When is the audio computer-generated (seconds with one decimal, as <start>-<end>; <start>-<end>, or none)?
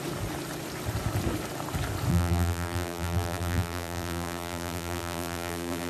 2.1-5.9